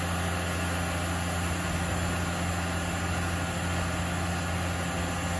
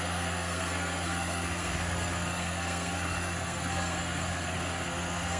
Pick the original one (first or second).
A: first